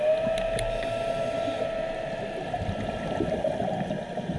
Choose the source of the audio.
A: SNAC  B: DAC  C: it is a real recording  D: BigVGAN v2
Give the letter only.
C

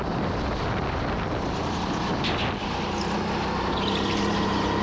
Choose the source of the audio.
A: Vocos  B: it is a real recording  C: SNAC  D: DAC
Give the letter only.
B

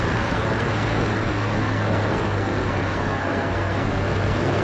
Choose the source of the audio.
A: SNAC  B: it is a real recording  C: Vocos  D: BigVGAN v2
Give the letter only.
A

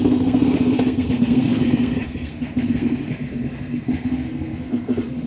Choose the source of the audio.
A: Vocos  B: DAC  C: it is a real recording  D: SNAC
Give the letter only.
D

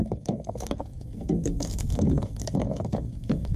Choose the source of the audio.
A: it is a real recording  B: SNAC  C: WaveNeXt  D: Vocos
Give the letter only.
B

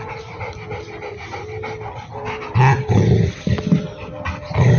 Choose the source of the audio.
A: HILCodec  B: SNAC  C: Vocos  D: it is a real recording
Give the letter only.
D